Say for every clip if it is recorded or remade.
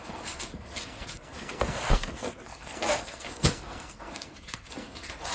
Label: remade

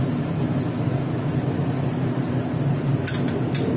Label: recorded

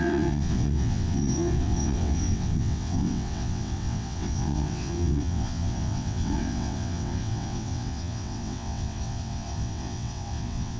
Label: remade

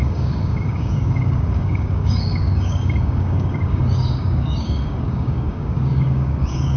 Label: remade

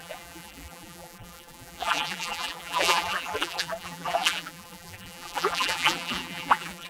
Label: remade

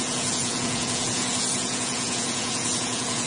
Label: remade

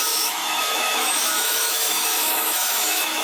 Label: remade